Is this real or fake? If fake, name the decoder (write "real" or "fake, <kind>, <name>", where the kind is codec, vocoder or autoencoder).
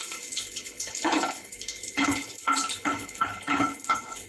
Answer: fake, codec, HILCodec